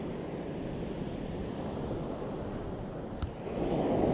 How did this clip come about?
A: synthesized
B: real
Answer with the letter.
B